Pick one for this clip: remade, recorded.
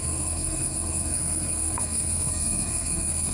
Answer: remade